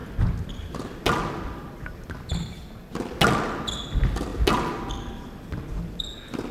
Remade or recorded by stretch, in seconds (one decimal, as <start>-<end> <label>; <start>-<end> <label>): 0.0-6.5 recorded